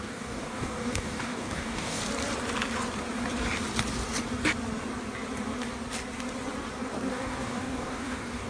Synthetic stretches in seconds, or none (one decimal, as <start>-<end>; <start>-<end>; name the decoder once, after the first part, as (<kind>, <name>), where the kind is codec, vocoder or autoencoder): 0.0-2.0 (codec, DAC); 7.1-8.5